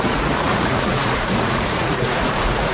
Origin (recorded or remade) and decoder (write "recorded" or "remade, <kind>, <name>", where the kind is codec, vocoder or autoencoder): remade, vocoder, Vocos